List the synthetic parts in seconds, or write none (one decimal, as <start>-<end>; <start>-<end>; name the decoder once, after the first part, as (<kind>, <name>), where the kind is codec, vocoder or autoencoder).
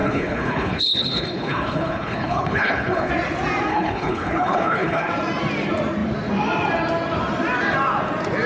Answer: 0.0-3.1 (codec, HILCodec); 3.7-5.1